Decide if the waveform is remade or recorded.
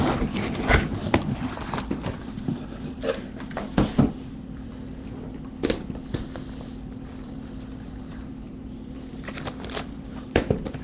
remade